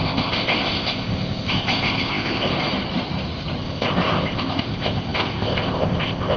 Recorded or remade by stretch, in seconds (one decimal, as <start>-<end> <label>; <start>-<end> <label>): 0.0-2.5 remade; 2.5-3.6 recorded; 3.6-6.4 remade